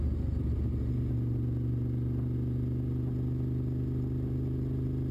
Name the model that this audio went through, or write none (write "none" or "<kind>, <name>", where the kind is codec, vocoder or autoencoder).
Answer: none